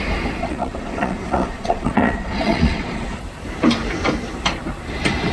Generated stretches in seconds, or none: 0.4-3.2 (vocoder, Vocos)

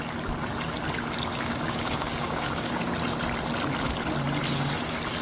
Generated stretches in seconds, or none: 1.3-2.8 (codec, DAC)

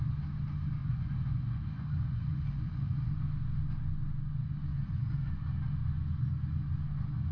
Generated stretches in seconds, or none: 0.8-3.1 (vocoder, Vocos); 4.7-5.3